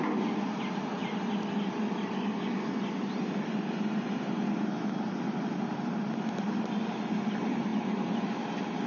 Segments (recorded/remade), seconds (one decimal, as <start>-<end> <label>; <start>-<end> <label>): 0.0-1.0 recorded; 1.0-5.9 remade; 5.9-7.7 recorded; 7.7-8.2 remade; 8.2-8.9 recorded